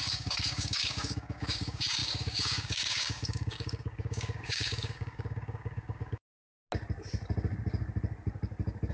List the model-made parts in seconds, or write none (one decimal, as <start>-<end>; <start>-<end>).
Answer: 0.0-6.5